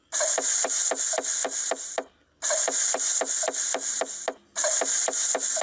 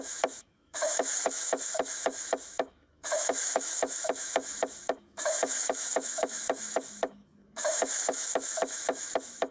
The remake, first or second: second